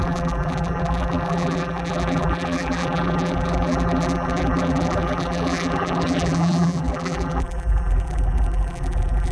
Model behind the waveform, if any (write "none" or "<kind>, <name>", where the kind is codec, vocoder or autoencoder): vocoder, BigVGAN v2